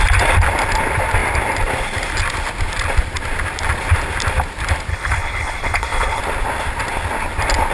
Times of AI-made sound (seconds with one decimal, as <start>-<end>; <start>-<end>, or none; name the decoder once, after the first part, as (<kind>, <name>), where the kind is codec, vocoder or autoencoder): 4.9-6.2 (codec, HILCodec)